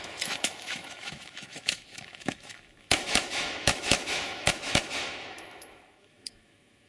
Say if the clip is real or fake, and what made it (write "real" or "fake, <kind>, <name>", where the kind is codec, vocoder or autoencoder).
fake, autoencoder, DAC-VAE